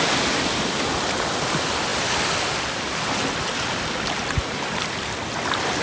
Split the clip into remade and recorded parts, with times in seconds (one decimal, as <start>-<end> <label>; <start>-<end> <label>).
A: 0.0-5.8 recorded

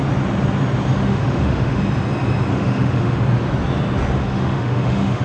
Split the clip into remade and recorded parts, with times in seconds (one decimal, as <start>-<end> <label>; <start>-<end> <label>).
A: 0.0-1.1 recorded; 1.1-1.8 remade; 1.8-2.5 recorded; 2.5-3.2 remade; 3.2-4.2 recorded; 4.2-5.2 remade

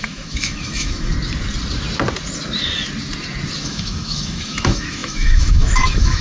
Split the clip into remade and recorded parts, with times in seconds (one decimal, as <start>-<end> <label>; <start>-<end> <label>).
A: 0.0-1.1 remade; 1.1-3.6 recorded; 3.6-6.2 remade

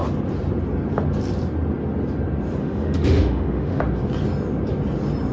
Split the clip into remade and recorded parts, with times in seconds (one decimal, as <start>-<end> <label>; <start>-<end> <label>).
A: 0.0-2.6 recorded; 2.6-3.8 remade; 3.8-5.3 recorded

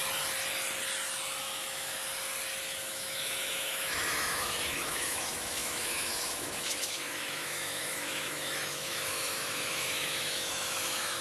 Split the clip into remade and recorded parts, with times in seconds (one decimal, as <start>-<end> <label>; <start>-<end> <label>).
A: 0.0-1.4 recorded; 1.4-2.0 remade; 2.0-2.6 recorded; 2.6-11.2 remade

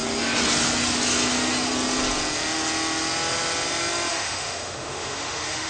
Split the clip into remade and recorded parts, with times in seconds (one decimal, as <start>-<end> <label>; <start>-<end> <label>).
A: 0.0-4.1 recorded; 4.1-5.7 remade

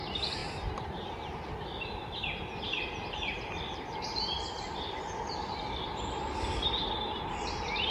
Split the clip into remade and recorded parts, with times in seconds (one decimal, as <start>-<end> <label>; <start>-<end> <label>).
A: 0.0-7.9 recorded

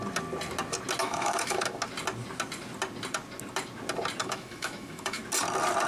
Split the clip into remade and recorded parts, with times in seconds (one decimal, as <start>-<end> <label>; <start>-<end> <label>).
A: 0.0-1.0 recorded; 1.0-1.6 remade; 1.6-4.2 recorded; 4.2-5.2 remade; 5.2-5.9 recorded